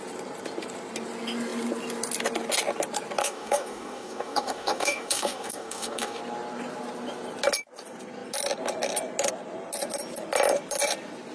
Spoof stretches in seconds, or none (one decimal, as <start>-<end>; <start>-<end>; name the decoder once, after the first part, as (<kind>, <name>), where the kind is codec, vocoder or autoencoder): 3.2-6.2 (codec, DAC)